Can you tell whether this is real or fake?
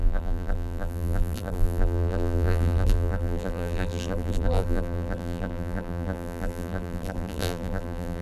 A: fake